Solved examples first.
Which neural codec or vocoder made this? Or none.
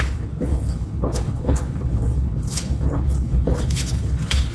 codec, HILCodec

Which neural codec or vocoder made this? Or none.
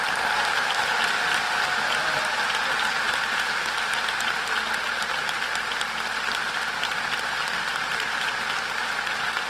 none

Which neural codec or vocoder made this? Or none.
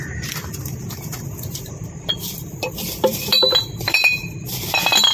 vocoder, BigVGAN v2